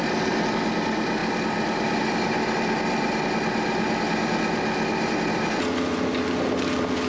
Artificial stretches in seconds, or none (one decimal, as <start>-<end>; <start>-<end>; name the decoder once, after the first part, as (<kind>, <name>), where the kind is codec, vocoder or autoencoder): none